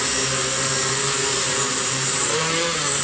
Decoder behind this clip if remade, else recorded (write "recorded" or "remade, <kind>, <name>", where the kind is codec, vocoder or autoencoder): remade, vocoder, BigVGAN v2